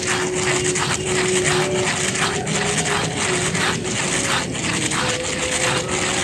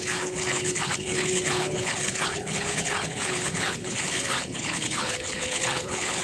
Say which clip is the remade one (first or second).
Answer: second